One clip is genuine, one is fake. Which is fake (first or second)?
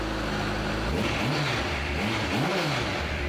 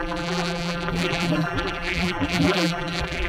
second